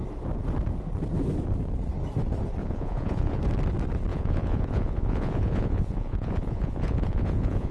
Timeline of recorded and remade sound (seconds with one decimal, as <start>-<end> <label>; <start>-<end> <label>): 0.0-2.6 recorded; 2.6-3.4 remade; 3.4-4.1 recorded; 4.1-7.7 remade